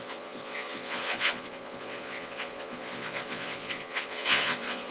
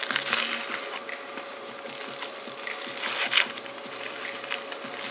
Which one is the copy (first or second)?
first